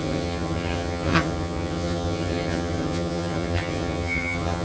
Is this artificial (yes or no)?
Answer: yes